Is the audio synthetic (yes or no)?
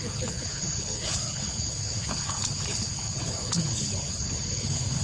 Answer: yes